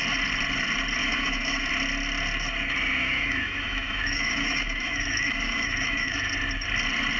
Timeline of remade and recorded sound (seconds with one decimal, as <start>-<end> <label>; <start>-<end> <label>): 0.0-1.0 recorded; 1.0-1.7 remade; 1.7-3.0 recorded; 3.0-6.3 remade; 6.3-7.2 recorded